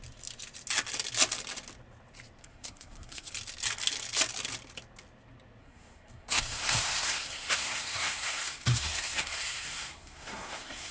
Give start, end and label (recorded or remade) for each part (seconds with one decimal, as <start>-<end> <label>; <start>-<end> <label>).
0.0-2.4 recorded; 2.4-3.3 remade; 3.3-5.6 recorded; 5.6-10.9 remade